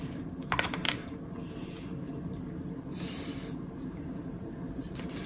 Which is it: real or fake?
fake